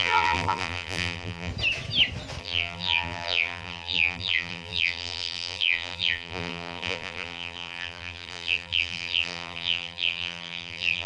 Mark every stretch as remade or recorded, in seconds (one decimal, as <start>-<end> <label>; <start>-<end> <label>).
0.0-1.5 remade; 1.5-2.4 recorded; 2.4-11.1 remade